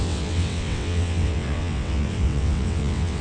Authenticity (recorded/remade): remade